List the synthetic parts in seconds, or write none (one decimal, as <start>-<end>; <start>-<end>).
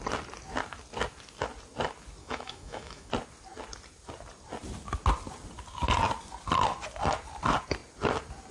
2.2-3.1